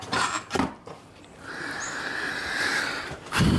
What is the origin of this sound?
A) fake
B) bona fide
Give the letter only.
A